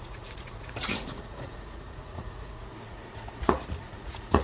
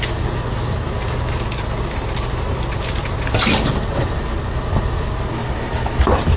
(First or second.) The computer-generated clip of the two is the first